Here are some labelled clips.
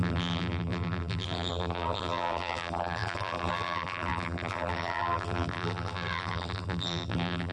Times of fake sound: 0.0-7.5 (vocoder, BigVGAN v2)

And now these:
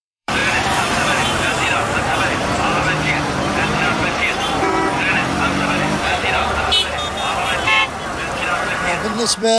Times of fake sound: 0.0-4.7 (vocoder, BigVGAN v2); 8.2-9.6